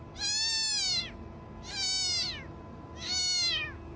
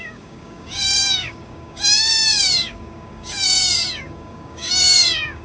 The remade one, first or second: second